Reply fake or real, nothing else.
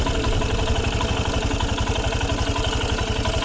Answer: real